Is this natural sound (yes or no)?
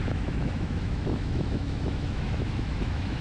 no